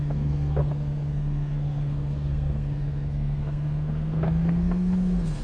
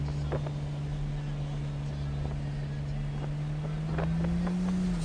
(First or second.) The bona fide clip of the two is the second